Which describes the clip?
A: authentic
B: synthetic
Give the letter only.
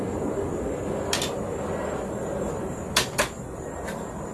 B